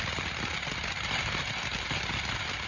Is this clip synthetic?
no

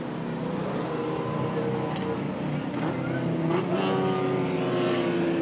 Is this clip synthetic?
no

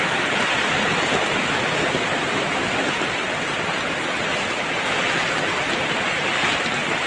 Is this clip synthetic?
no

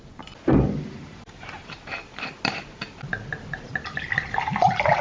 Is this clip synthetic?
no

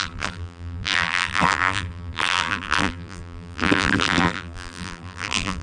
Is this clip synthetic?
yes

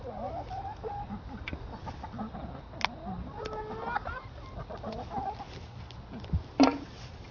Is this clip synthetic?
no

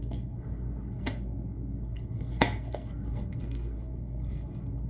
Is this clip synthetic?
yes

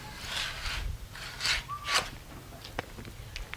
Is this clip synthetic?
no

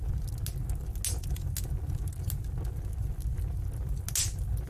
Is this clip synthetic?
no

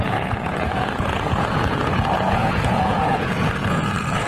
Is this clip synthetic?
yes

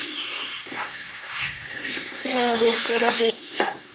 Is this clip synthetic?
yes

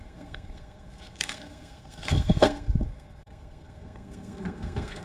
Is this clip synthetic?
yes